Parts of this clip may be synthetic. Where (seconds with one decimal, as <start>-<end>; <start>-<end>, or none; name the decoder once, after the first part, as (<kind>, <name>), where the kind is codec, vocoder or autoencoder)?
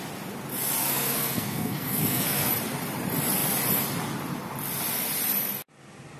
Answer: 0.8-2.5 (codec, SNAC)